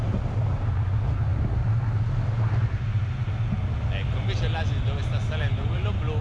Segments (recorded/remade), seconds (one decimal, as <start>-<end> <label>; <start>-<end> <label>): 0.0-6.2 recorded